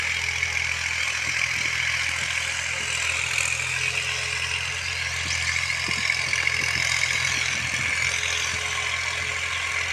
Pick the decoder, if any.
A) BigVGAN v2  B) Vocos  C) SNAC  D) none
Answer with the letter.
D